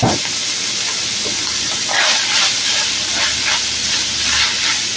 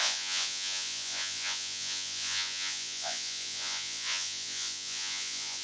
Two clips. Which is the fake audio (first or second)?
second